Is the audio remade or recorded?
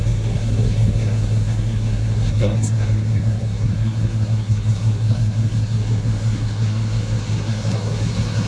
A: remade